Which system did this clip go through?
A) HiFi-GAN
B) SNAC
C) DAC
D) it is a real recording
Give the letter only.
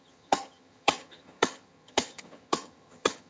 A